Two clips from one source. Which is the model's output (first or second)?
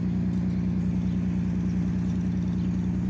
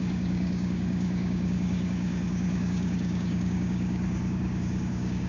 second